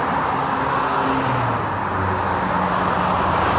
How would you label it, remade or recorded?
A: recorded